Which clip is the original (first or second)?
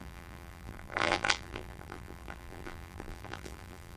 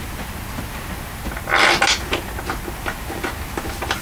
second